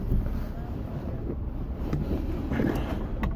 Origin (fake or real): real